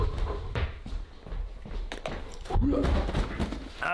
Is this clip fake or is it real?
real